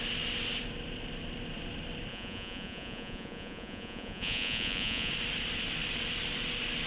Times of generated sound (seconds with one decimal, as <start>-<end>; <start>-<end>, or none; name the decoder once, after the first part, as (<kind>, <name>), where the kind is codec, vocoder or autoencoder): 2.1-5.1 (vocoder, Vocos)